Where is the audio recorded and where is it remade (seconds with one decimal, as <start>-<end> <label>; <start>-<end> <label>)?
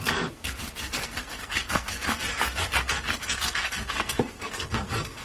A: 0.0-5.2 remade